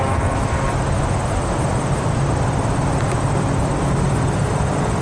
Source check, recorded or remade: recorded